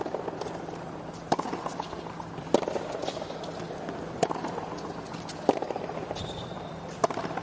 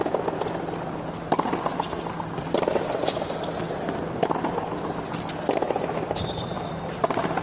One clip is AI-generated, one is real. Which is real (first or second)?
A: second